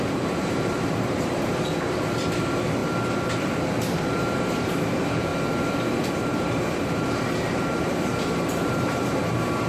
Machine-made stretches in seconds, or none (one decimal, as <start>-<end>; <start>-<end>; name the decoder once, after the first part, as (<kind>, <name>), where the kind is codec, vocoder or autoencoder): 0.0-2.8 (vocoder, BigVGAN v2); 4.0-5.3; 6.2-9.7